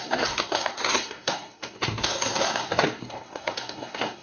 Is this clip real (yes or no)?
no